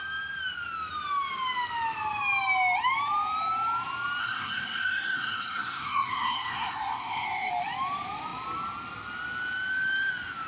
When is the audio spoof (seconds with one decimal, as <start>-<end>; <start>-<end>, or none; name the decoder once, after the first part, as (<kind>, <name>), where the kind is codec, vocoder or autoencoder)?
4.2-7.5 (codec, SNAC)